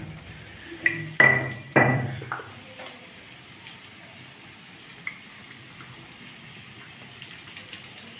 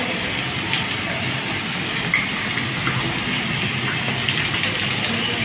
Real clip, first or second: second